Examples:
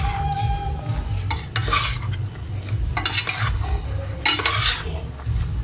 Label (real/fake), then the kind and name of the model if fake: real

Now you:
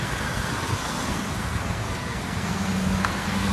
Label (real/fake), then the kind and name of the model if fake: fake, codec, SNAC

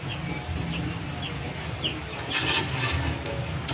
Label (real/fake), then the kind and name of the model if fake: real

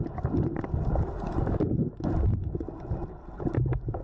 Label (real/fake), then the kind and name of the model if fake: real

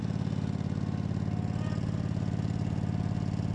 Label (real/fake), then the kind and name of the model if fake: real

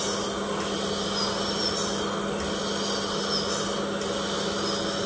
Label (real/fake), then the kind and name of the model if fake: real